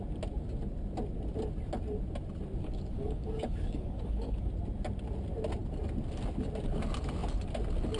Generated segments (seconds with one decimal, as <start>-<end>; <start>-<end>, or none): 2.6-4.5